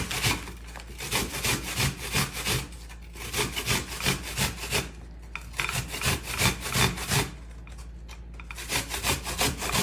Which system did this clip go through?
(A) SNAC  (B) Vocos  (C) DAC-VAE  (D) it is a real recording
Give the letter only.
D